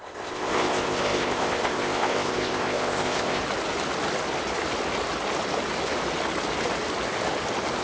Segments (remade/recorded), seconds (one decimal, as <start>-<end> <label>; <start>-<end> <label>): 0.0-3.4 remade; 3.4-7.8 recorded